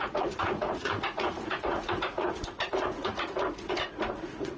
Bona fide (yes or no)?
no